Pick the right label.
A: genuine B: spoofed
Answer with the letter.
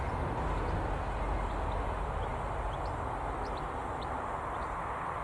A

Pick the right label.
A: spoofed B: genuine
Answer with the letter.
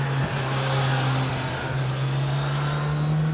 B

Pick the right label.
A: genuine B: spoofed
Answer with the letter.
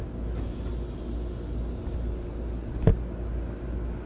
A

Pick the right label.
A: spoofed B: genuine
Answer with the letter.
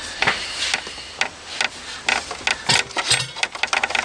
B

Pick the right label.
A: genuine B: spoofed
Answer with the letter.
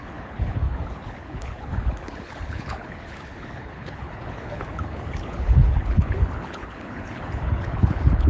B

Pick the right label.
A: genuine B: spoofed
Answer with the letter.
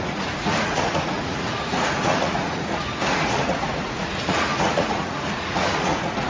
B